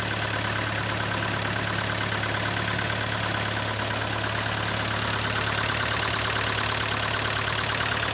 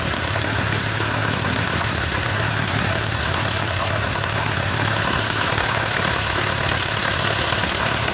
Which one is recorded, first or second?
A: first